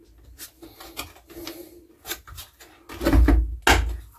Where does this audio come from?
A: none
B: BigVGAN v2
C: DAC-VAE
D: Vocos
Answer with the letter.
A